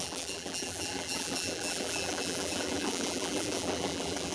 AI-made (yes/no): yes